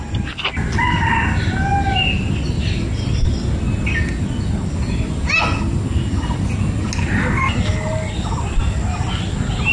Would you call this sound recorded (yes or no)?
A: yes